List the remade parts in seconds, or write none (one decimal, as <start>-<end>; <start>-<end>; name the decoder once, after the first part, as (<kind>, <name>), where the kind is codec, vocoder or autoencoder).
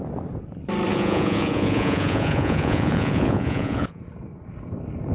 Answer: 0.9-4.0 (vocoder, Vocos)